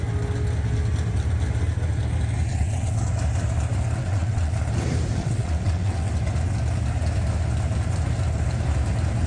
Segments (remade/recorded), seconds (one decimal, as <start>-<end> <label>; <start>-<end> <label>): 0.0-2.5 recorded; 2.5-3.0 remade; 3.0-4.0 recorded; 4.0-4.5 remade; 4.5-5.2 recorded; 5.2-6.1 remade; 6.1-9.3 recorded